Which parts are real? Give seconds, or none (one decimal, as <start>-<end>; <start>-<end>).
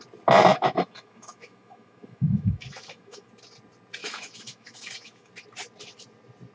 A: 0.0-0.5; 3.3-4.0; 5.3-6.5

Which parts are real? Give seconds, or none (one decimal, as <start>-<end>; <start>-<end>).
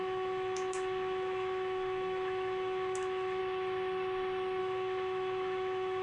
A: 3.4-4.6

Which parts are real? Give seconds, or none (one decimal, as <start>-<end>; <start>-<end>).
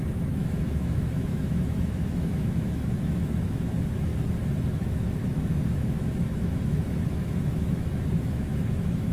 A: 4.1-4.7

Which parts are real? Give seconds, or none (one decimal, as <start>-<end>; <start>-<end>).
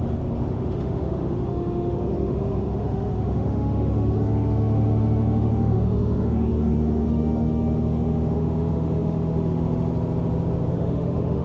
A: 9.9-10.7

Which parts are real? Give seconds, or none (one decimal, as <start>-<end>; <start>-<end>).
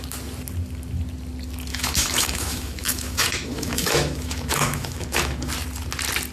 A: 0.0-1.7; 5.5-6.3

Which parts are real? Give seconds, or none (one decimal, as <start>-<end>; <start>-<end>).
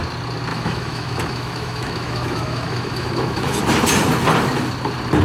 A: 0.0-0.5; 3.6-5.2